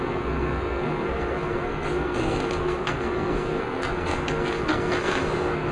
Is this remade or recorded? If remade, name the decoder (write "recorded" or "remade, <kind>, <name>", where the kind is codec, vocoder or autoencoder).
remade, codec, SNAC